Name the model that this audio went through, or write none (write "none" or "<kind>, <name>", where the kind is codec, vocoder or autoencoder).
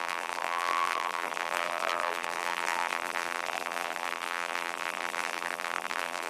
vocoder, BigVGAN v2